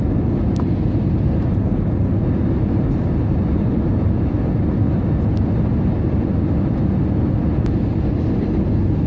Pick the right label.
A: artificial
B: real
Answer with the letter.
B